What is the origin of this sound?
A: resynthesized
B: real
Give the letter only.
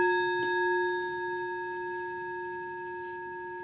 B